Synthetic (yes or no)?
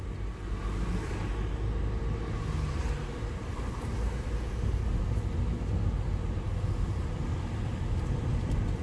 no